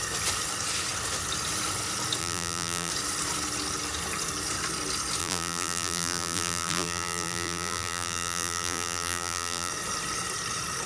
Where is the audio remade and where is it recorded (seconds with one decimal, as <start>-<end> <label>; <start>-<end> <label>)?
0.0-2.2 recorded; 2.2-2.9 remade; 2.9-5.2 recorded; 5.2-9.7 remade; 9.7-10.9 recorded